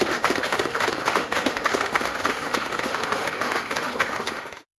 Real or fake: fake